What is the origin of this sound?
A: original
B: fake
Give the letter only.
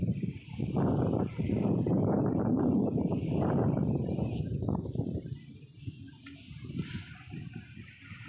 B